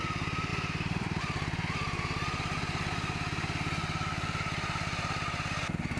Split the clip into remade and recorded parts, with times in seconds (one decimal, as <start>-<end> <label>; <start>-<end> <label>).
0.0-0.5 recorded; 0.5-1.2 remade; 1.2-6.0 recorded